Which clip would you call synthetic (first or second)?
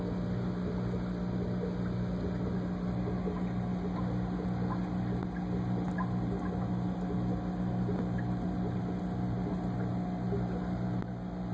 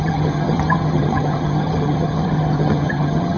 second